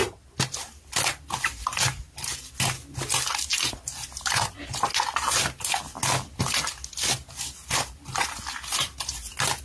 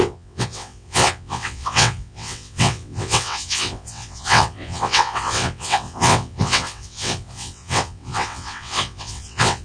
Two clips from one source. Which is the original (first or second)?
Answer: first